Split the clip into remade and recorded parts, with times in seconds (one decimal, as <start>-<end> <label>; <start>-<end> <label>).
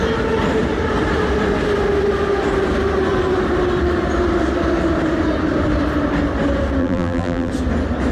0.0-6.8 recorded; 6.8-7.5 remade; 7.5-8.1 recorded